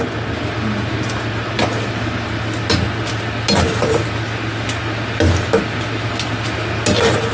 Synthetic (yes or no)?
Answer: no